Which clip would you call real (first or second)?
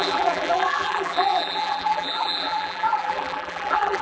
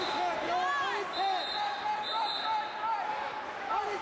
second